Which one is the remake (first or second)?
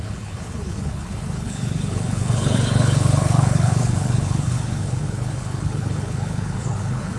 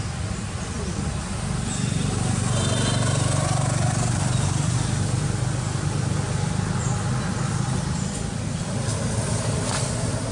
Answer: first